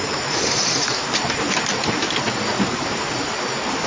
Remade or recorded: remade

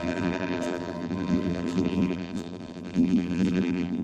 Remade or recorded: remade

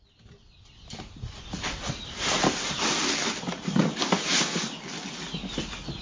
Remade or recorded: recorded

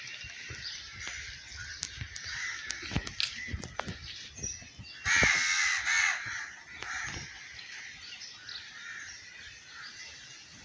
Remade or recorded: recorded